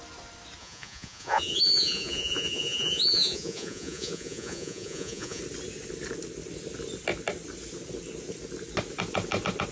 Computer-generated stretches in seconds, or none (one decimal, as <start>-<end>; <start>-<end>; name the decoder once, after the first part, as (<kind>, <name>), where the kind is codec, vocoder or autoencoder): 0.6-5.4 (vocoder, Vocos)